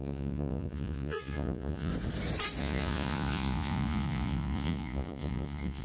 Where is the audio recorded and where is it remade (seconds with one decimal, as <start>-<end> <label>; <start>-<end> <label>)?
0.0-1.9 remade; 1.9-2.6 recorded; 2.6-5.8 remade